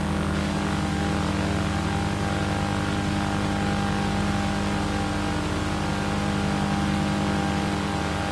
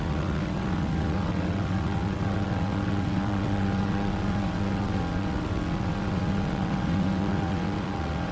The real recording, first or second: first